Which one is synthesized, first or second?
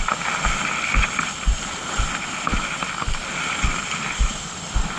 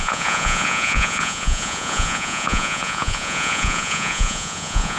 second